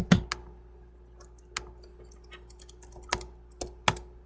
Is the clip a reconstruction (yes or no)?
no